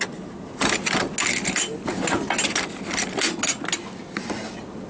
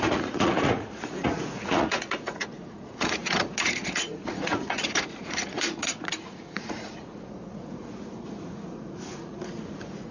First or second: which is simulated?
second